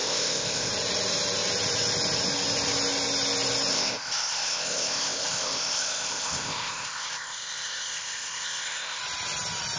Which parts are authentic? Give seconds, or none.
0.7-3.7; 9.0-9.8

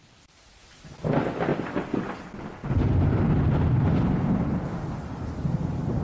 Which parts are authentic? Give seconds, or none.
0.0-2.6

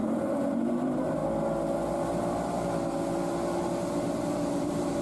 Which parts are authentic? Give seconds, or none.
1.2-4.2